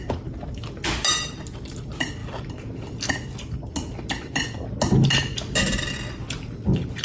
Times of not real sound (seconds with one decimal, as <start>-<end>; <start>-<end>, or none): none